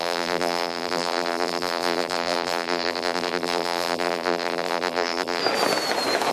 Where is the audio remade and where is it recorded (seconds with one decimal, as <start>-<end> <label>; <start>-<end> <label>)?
0.0-5.4 remade; 5.4-6.3 recorded